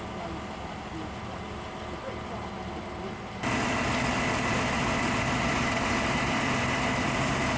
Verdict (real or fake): real